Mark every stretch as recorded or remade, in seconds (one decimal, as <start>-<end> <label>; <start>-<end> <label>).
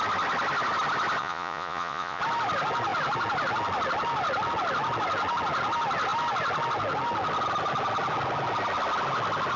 0.0-1.2 recorded; 1.2-2.2 remade; 2.2-9.6 recorded